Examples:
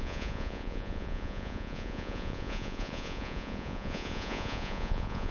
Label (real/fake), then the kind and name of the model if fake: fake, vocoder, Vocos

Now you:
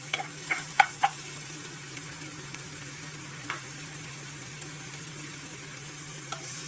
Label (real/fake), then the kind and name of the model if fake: fake, vocoder, Vocos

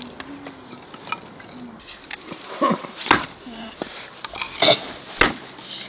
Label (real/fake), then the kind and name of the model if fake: real